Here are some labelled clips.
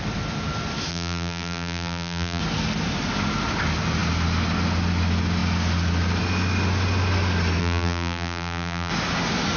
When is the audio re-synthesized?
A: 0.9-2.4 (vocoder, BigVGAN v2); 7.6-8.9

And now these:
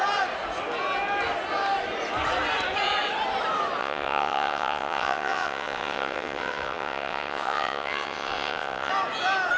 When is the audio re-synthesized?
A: 3.8-8.9 (vocoder, WaveNeXt)